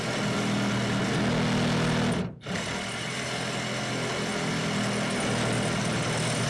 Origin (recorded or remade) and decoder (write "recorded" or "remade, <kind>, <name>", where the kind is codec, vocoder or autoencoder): recorded